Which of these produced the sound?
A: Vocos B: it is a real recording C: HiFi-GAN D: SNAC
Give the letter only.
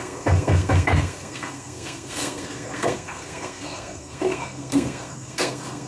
D